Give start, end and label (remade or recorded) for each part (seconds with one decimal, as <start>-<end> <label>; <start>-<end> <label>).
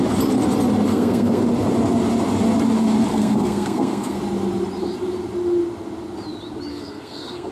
0.0-0.9 recorded; 0.9-1.4 remade; 1.4-3.1 recorded; 3.1-4.2 remade; 4.2-6.7 recorded; 6.7-7.5 remade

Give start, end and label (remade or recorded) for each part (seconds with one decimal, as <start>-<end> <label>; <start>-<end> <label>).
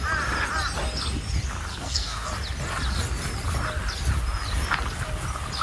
0.0-1.7 recorded; 1.7-2.3 remade; 2.3-5.6 recorded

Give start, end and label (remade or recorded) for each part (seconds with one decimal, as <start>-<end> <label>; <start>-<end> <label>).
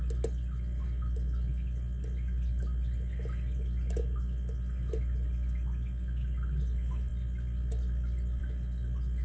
0.0-9.2 recorded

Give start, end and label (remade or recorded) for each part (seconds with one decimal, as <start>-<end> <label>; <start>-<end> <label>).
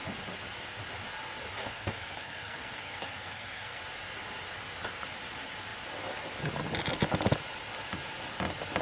0.0-1.6 recorded; 1.6-3.8 remade; 3.8-8.8 recorded